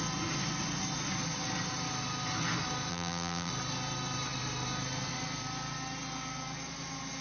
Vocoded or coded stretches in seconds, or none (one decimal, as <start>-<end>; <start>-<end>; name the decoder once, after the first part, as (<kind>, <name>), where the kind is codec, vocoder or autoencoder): 2.9-3.5 (vocoder, BigVGAN v2)